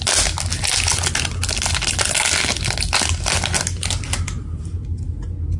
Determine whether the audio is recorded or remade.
recorded